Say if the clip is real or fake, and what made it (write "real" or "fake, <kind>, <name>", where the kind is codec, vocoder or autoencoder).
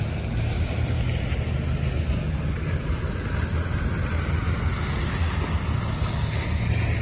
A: real